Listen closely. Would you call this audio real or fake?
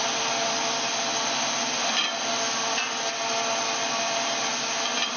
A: real